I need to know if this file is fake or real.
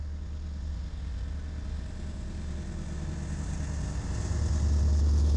real